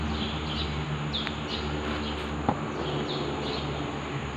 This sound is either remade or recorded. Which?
recorded